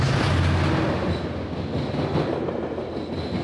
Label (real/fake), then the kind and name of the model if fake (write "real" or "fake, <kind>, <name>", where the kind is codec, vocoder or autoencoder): real